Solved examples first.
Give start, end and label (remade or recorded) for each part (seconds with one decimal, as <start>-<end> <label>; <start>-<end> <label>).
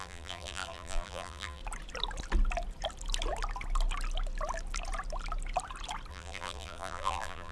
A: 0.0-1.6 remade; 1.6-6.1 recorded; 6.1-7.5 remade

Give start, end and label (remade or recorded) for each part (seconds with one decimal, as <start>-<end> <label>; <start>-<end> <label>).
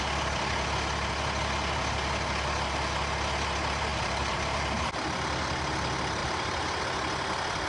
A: 0.0-3.9 recorded; 3.9-4.9 remade; 4.9-6.2 recorded; 6.2-6.8 remade; 6.8-7.7 recorded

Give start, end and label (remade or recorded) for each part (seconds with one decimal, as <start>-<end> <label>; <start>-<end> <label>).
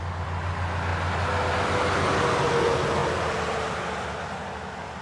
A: 0.0-5.0 recorded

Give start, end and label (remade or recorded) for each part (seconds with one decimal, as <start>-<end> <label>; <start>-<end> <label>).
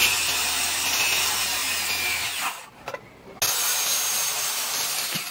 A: 0.0-0.9 recorded; 0.9-1.6 remade; 1.6-2.5 recorded; 2.5-2.9 remade; 2.9-4.1 recorded; 4.1-5.3 remade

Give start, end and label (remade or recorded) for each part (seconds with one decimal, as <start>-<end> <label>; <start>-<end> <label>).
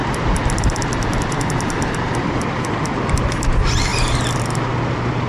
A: 0.0-3.2 remade; 3.2-5.3 recorded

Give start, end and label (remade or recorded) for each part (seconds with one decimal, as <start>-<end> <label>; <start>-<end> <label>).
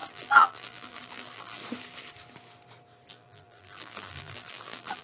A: 0.0-1.6 remade; 1.6-3.1 recorded; 3.1-5.0 remade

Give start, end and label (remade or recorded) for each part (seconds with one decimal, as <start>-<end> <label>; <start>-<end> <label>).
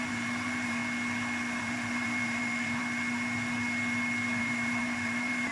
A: 0.0-0.8 remade; 0.8-1.6 recorded; 1.6-2.8 remade; 2.8-4.4 recorded; 4.4-5.5 remade